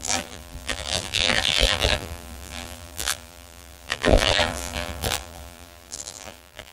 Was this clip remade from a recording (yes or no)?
yes